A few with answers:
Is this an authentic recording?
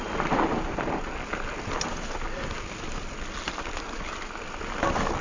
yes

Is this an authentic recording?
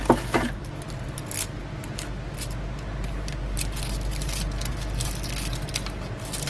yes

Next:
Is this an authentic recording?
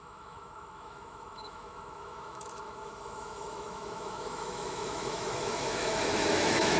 no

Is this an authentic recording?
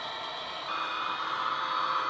yes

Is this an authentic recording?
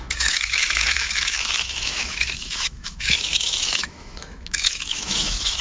no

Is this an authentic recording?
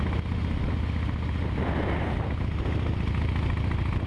yes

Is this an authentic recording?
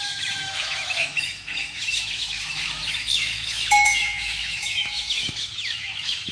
no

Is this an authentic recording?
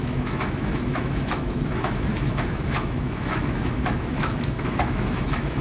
no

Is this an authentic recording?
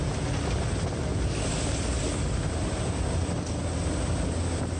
yes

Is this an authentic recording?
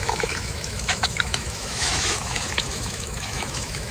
no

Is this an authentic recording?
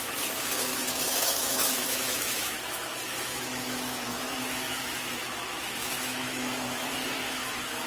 no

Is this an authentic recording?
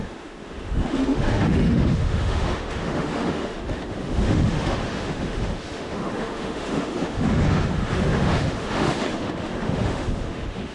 no